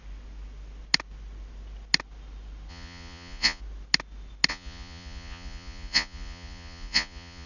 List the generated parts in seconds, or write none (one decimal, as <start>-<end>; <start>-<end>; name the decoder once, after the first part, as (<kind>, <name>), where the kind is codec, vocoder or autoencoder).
2.7-3.6 (vocoder, Vocos); 4.5-7.5